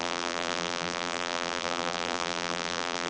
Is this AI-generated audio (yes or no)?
yes